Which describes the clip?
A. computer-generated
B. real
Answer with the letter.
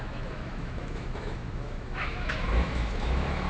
A